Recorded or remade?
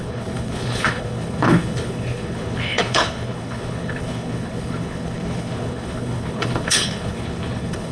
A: remade